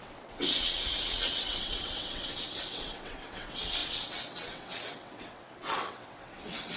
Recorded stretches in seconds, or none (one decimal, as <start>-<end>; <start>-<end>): none